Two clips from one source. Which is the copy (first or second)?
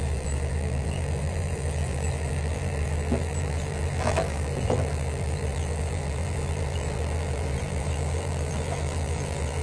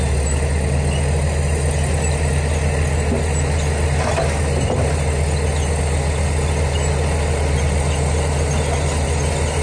first